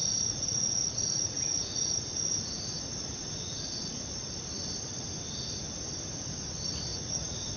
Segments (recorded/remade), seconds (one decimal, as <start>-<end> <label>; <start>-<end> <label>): 0.0-3.9 remade; 3.9-6.9 recorded; 6.9-7.6 remade